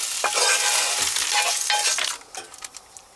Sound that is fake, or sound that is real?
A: real